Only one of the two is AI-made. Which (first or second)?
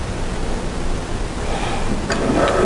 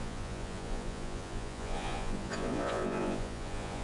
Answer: second